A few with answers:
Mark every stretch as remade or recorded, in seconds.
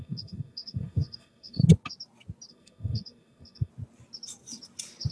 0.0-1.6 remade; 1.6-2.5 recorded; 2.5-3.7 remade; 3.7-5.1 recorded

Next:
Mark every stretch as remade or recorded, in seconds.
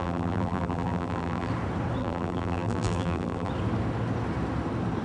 0.0-1.5 remade; 1.5-2.0 recorded; 2.0-3.5 remade; 3.5-5.0 recorded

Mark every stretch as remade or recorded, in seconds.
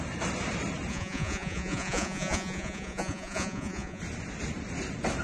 0.0-0.9 recorded; 0.9-4.0 remade; 4.0-5.2 recorded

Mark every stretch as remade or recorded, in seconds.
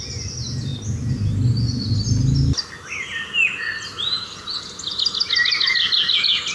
0.0-6.5 recorded